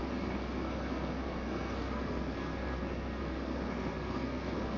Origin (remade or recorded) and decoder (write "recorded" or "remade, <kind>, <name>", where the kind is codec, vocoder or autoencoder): remade, codec, SNAC